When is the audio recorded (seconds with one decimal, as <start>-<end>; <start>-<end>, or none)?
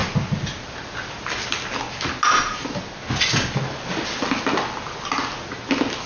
0.0-6.1